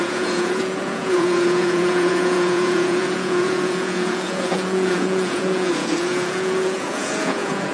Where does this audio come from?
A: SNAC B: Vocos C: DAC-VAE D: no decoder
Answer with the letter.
B